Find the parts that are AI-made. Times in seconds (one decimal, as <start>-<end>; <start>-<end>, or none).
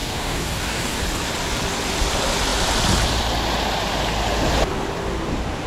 0.0-1.0